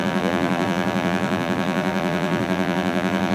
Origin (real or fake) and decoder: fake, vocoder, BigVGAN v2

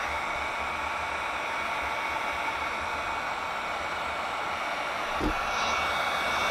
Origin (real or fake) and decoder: real